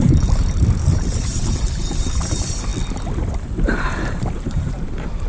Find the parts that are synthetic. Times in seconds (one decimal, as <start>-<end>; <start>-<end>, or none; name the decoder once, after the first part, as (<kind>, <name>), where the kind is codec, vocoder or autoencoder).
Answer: 0.0-2.7 (vocoder, BigVGAN v2); 3.4-5.3